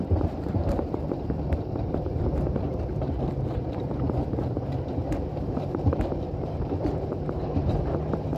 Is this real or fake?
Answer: fake